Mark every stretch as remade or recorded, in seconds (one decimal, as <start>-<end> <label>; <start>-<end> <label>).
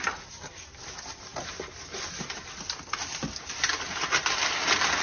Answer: 0.0-5.0 recorded